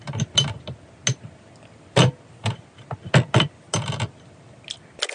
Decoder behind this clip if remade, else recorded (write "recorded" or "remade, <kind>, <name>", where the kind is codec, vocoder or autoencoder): recorded